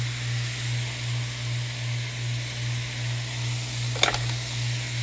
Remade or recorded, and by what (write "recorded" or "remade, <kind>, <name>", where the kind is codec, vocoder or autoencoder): recorded